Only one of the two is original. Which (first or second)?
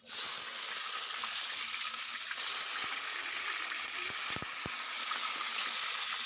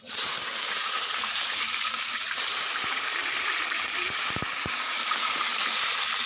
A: first